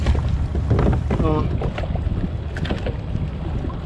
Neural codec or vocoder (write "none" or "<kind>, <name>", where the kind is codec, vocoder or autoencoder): none